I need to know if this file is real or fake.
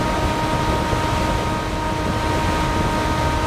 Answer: real